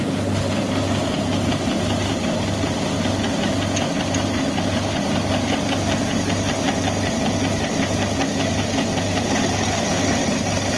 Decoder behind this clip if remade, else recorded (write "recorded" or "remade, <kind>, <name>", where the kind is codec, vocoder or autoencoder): recorded